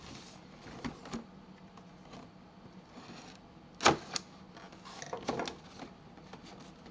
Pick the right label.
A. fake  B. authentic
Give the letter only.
B